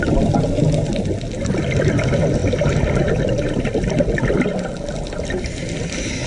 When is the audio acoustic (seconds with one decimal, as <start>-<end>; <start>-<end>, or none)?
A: 0.0-6.3